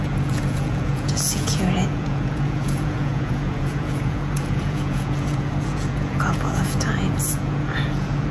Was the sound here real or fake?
fake